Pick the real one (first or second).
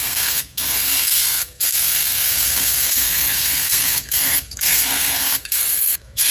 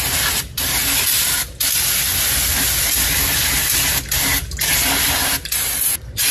second